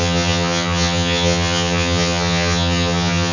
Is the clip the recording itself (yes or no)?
no